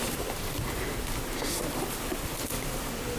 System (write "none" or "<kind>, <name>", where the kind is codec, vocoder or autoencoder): none